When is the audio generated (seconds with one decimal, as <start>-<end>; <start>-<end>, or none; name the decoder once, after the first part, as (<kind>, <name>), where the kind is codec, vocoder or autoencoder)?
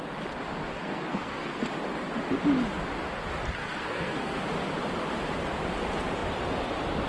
0.7-1.6 (codec, SNAC); 3.6-4.4